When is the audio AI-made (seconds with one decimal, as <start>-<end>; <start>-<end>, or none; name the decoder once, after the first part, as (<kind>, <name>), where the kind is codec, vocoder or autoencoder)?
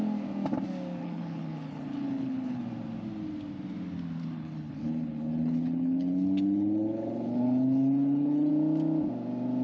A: 1.0-2.6 (codec, HILCodec); 4.2-8.5